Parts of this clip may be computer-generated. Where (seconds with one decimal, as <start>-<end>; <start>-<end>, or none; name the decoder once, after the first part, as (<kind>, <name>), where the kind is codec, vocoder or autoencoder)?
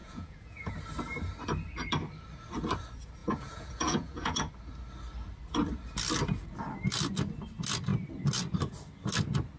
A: 0.0-0.7 (vocoder, Vocos); 3.2-4.5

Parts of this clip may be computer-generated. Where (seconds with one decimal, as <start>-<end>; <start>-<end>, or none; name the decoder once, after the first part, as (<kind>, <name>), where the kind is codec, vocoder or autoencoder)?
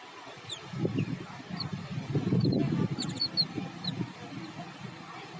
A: none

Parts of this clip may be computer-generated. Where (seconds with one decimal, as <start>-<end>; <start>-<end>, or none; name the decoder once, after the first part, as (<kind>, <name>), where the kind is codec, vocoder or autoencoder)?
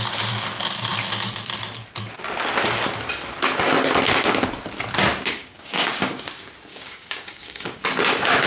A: 5.4-6.3 (codec, DAC); 6.7-7.8